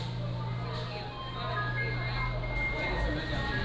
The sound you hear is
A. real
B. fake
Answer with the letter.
A